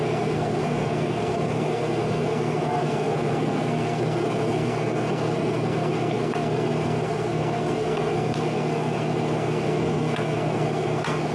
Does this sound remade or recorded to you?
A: remade